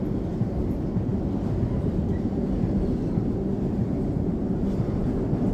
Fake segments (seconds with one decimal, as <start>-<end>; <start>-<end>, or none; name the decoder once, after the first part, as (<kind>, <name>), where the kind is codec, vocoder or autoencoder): none